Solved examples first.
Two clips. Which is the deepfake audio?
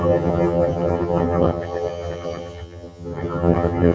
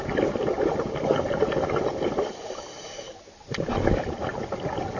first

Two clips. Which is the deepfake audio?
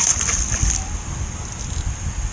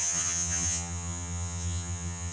second